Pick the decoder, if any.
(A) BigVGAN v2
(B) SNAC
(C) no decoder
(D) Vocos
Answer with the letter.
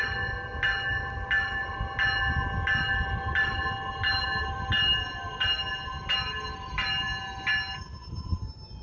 C